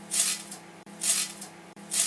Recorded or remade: remade